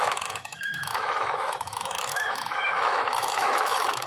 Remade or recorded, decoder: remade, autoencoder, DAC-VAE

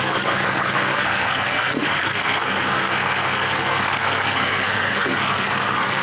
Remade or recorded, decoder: remade, codec, SNAC